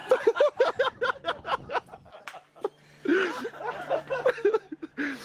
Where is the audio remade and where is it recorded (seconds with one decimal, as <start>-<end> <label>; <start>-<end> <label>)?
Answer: 0.0-0.8 remade; 0.8-3.1 recorded; 3.1-4.0 remade; 4.0-5.2 recorded